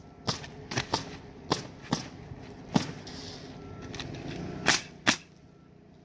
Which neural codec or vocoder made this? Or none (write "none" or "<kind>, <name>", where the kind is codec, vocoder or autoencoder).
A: none